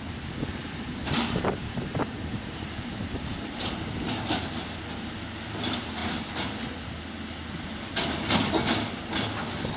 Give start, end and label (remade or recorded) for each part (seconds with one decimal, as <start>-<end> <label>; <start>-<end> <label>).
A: 0.0-1.0 recorded; 1.0-3.7 remade; 3.7-9.8 recorded